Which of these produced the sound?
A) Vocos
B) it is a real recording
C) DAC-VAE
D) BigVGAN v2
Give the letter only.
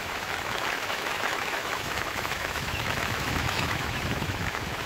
C